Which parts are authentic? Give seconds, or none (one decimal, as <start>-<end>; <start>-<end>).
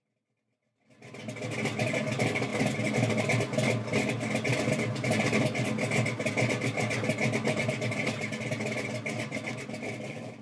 0.0-10.4